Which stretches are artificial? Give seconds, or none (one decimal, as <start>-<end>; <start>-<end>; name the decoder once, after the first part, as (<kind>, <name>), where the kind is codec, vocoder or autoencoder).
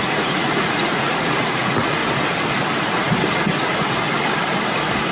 0.0-2.0 (vocoder, Vocos)